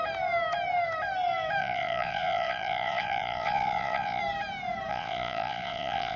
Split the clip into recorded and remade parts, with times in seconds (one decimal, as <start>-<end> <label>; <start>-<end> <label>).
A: 0.0-1.6 recorded; 1.6-4.2 remade; 4.2-4.9 recorded; 4.9-6.2 remade